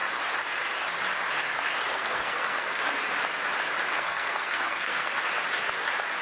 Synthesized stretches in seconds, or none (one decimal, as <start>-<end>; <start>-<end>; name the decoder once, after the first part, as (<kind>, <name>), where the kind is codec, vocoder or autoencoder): 1.9-2.8 (codec, SNAC); 3.9-5.1